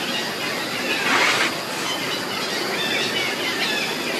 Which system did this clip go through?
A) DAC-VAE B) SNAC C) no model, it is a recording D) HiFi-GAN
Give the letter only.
C